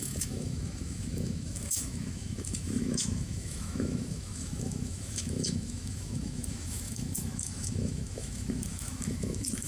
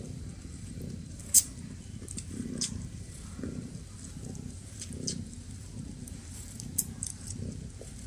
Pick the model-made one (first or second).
first